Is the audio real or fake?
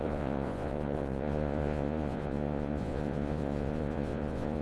fake